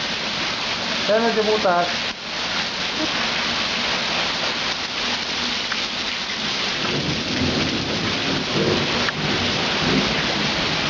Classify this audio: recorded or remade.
recorded